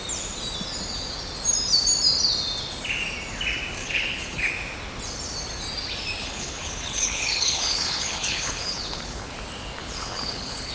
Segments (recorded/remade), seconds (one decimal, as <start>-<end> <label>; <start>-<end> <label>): 0.0-3.8 recorded; 3.8-4.5 remade; 4.5-6.2 recorded; 6.2-9.3 remade; 9.3-9.8 recorded; 9.8-10.7 remade